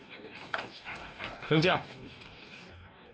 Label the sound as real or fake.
fake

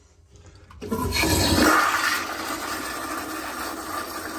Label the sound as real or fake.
real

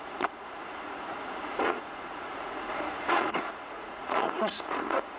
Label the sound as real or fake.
fake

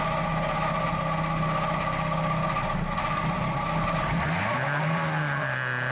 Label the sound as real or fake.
real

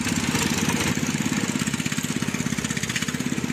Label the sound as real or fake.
fake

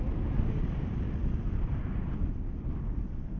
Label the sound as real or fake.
real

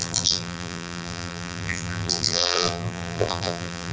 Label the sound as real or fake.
fake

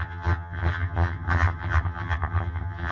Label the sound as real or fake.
fake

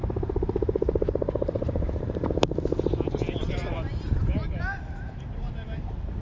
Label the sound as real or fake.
fake